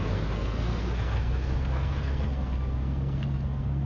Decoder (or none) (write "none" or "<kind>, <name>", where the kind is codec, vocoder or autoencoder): codec, SNAC